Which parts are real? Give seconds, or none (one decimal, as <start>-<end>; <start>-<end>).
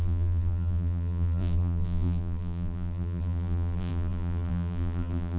none